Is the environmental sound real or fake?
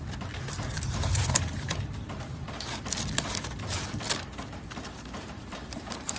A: fake